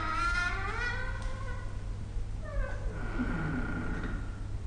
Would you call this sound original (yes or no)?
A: yes